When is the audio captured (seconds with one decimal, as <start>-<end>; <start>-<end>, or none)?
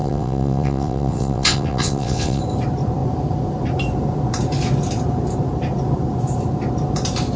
2.4-7.4